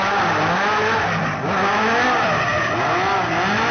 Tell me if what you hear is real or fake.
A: real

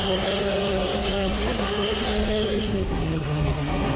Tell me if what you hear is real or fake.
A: fake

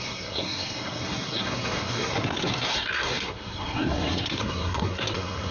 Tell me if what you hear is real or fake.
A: fake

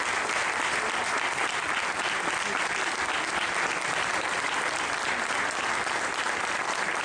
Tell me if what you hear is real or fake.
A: real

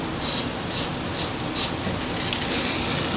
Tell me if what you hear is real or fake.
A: real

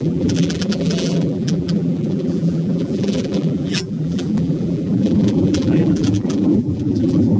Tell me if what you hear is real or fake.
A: fake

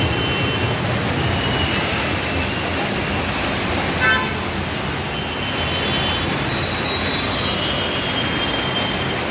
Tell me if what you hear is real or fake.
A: real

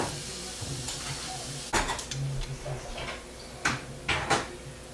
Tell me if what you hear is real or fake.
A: real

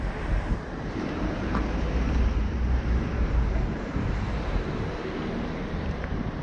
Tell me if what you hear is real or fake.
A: fake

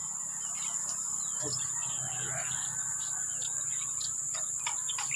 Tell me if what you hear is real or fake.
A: real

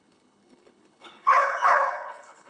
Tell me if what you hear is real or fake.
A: fake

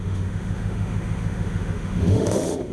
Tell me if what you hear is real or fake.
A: fake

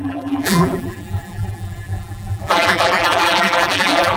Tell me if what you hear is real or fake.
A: fake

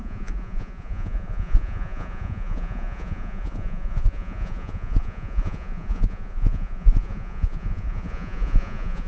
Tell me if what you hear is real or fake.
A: fake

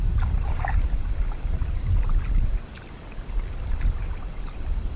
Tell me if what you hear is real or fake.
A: real